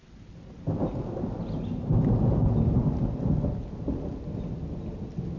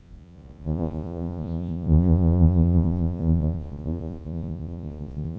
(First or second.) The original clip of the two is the first